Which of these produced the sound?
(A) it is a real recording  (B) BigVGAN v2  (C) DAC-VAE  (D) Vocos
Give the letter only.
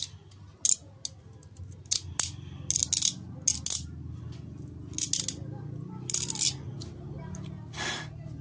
A